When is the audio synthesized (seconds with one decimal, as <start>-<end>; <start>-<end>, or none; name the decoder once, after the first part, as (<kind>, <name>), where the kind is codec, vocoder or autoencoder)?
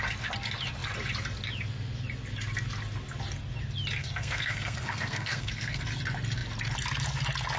4.0-5.8 (codec, SNAC)